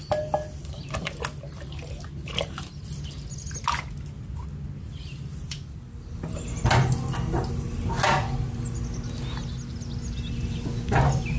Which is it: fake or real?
real